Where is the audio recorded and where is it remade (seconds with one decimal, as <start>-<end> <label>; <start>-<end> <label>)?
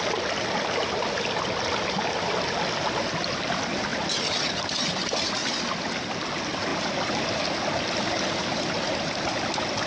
0.0-9.9 recorded